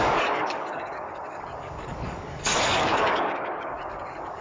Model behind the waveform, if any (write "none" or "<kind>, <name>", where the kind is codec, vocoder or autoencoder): codec, DAC